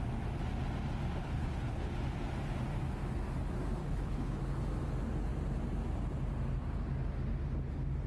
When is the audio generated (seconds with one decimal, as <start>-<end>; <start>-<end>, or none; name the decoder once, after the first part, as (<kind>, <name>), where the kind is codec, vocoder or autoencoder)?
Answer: 1.2-1.9 (codec, HILCodec); 3.8-4.4